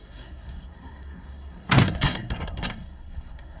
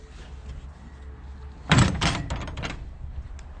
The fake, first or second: first